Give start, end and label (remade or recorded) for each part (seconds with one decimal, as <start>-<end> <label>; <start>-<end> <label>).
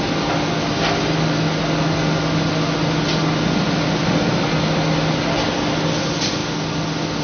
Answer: 0.0-7.2 recorded